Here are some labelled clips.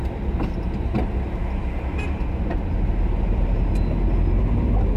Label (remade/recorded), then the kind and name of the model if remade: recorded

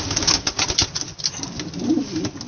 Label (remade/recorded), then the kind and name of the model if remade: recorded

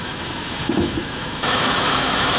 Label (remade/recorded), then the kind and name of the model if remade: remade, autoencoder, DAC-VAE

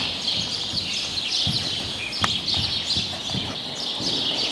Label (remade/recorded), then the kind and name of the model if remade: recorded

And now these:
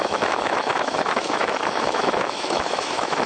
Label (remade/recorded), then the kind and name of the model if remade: remade, autoencoder, DAC-VAE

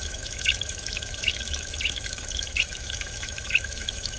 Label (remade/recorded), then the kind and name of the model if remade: remade, autoencoder, DAC-VAE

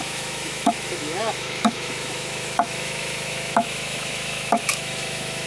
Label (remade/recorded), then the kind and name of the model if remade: remade, autoencoder, DAC-VAE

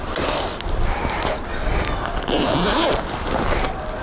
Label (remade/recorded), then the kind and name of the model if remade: recorded